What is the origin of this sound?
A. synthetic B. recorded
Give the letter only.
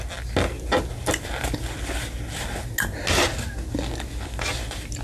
B